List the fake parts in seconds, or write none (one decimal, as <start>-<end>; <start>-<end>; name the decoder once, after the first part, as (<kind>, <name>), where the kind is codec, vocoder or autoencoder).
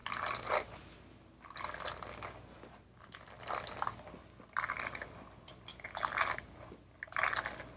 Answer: none